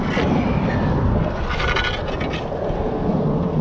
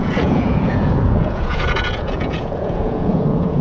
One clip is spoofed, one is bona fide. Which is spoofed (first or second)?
second